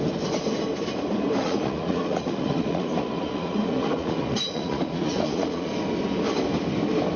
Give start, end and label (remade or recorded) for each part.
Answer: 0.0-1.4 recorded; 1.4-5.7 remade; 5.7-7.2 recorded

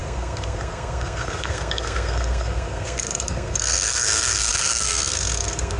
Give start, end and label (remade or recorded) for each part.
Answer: 0.0-5.8 remade

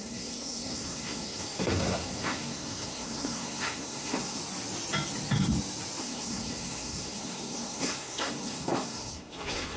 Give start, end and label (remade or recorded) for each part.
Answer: 0.0-4.4 remade; 4.4-6.0 recorded; 6.0-9.8 remade

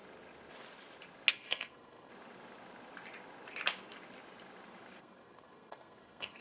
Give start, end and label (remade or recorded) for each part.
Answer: 0.0-1.3 recorded; 1.3-2.1 remade; 2.1-5.0 recorded; 5.0-6.4 remade

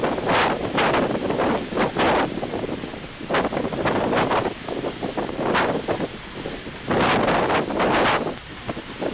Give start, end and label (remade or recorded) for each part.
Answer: 0.0-9.1 recorded

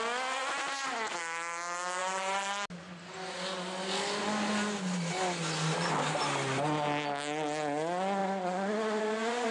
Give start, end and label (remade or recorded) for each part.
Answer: 0.0-8.2 recorded; 8.2-9.0 remade; 9.0-9.5 recorded

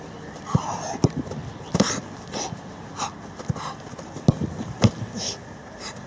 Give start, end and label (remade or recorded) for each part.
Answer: 0.0-6.1 recorded

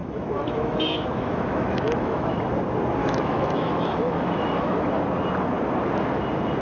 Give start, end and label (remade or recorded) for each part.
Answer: 0.0-2.4 remade; 2.4-3.0 recorded; 3.0-4.9 remade; 4.9-6.6 recorded